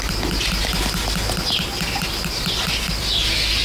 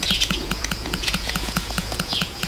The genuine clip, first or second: first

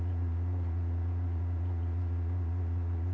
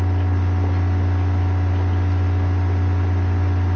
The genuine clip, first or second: second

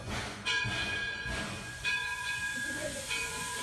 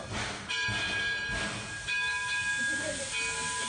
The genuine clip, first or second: second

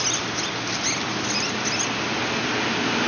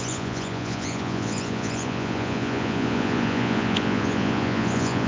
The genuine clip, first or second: first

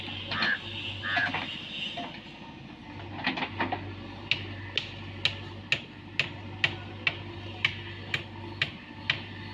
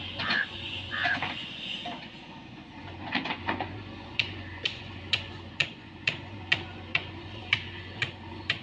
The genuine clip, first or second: first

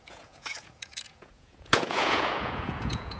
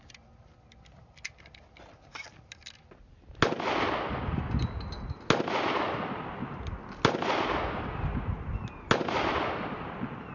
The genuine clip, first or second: second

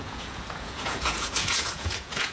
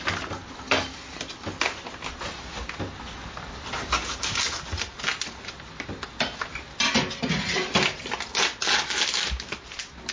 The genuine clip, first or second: second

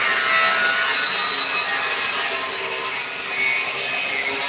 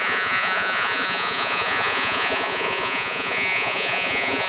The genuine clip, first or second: first